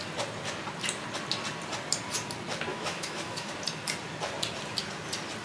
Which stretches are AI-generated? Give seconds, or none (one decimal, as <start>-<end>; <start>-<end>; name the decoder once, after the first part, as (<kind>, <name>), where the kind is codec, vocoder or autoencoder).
2.7-3.5 (autoencoder, DAC-VAE)